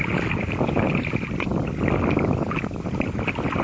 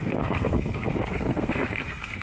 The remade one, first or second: second